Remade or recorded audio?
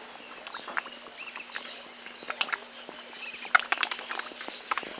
recorded